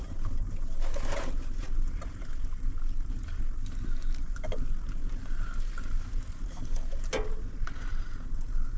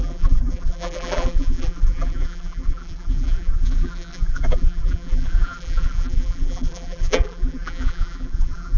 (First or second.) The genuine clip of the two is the first